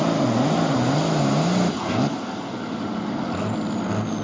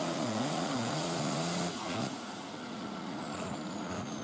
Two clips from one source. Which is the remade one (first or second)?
second